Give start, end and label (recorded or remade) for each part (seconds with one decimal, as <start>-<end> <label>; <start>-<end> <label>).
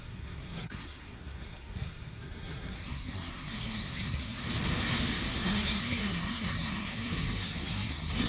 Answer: 0.0-4.4 remade; 4.4-5.3 recorded; 5.3-8.3 remade